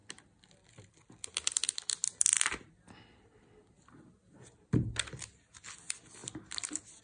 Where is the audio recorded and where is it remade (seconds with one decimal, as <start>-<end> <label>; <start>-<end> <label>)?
0.0-7.0 recorded